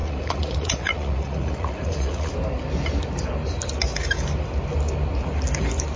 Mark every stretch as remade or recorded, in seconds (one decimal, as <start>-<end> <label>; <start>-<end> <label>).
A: 0.0-2.3 remade; 2.3-6.0 recorded